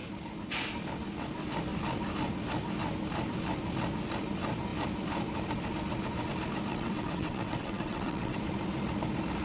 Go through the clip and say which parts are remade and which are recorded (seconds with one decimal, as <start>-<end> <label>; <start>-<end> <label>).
0.0-6.7 recorded; 6.7-8.4 remade; 8.4-9.4 recorded

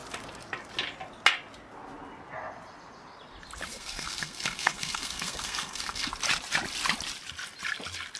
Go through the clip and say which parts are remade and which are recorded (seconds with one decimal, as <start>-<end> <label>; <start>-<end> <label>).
0.0-3.7 recorded; 3.7-6.1 remade; 6.1-8.2 recorded

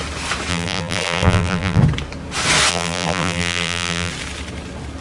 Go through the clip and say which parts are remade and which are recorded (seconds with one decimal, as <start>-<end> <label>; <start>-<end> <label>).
0.0-0.5 recorded; 0.5-1.8 remade; 1.8-2.7 recorded; 2.7-4.1 remade; 4.1-5.0 recorded

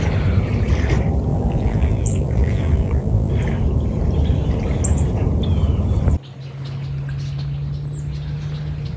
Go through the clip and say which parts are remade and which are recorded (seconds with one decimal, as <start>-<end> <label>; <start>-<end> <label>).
0.0-1.3 recorded; 1.3-3.3 remade; 3.3-9.0 recorded

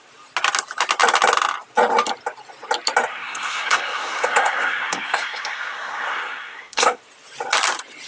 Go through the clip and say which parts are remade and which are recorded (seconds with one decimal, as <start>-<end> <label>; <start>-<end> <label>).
0.0-3.1 recorded; 3.1-7.0 remade; 7.0-8.1 recorded

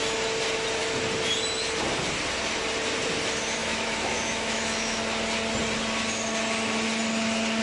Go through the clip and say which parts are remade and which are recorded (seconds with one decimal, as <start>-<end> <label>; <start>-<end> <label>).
0.0-3.6 recorded; 3.6-5.0 remade; 5.0-7.6 recorded